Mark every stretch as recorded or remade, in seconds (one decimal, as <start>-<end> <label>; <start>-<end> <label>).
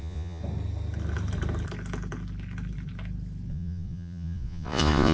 0.0-0.4 remade; 0.4-3.5 recorded; 3.5-5.1 remade